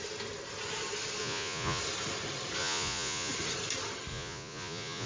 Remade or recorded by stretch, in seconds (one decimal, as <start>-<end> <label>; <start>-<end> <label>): 0.0-1.2 recorded; 1.2-1.8 remade; 1.8-2.6 recorded; 2.6-3.3 remade; 3.3-4.1 recorded; 4.1-5.1 remade